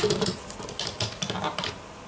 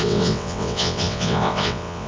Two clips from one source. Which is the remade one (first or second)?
second